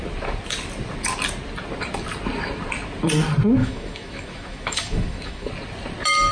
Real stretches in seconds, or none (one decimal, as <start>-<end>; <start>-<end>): 0.0-3.6; 5.5-6.3